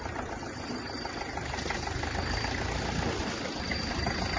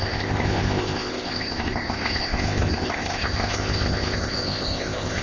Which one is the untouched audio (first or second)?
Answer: first